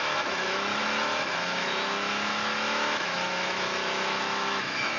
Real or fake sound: fake